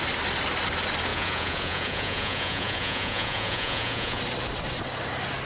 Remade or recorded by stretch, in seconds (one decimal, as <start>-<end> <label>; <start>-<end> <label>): 0.0-1.1 recorded; 1.1-4.2 remade; 4.2-5.5 recorded